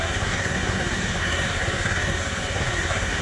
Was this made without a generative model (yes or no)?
no